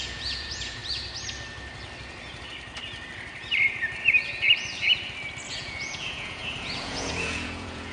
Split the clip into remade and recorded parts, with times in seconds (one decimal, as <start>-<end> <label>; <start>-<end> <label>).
0.0-0.8 remade; 0.8-5.5 recorded; 5.5-7.9 remade